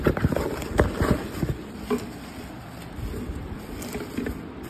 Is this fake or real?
real